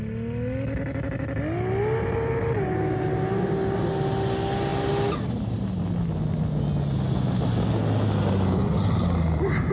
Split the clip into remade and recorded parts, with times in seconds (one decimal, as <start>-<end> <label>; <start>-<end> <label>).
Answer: 0.0-9.7 recorded